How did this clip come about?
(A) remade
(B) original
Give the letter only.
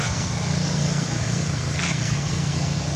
A